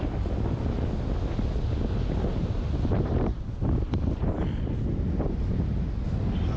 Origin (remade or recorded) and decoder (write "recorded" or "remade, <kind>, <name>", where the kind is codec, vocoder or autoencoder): recorded